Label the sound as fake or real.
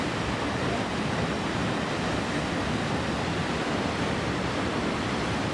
real